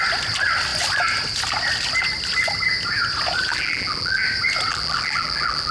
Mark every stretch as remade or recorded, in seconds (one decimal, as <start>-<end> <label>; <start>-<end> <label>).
0.0-3.5 recorded; 3.5-4.2 remade; 4.2-4.7 recorded; 4.7-5.7 remade